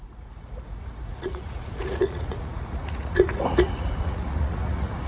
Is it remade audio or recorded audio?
remade